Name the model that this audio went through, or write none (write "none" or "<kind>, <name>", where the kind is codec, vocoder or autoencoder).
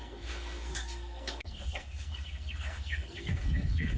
codec, SNAC